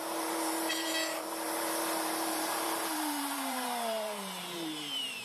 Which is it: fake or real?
fake